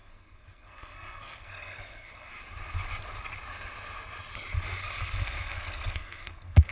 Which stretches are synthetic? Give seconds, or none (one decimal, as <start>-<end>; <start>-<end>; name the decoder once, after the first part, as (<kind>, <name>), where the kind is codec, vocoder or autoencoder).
0.0-2.3 (codec, SNAC); 4.8-6.7

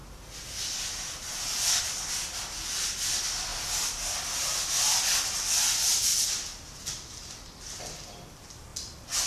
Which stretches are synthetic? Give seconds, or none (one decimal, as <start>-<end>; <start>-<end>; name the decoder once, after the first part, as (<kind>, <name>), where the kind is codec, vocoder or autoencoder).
none

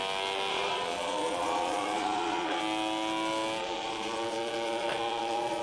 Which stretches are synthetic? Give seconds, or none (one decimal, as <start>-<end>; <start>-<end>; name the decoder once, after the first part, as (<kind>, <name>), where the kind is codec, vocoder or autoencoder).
0.5-2.6 (vocoder, Vocos); 3.6-5.6

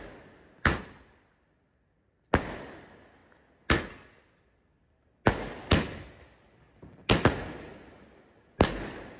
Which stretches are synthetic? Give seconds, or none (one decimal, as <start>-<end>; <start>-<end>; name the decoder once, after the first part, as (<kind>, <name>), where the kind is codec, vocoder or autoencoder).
none

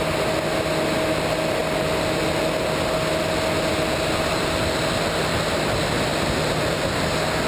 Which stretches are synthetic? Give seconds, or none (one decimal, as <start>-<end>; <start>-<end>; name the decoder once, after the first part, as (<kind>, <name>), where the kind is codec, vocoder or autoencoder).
none

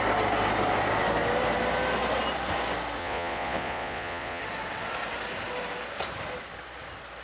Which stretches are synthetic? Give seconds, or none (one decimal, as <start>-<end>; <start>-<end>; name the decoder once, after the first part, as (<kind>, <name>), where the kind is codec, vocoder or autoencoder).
3.0-4.4 (vocoder, Vocos)

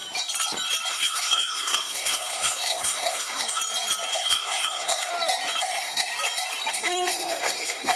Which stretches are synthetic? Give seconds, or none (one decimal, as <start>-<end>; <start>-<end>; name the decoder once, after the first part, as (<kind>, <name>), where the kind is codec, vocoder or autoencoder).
0.9-3.6 (codec, SNAC); 4.1-5.1; 5.6-6.1; 6.7-8.0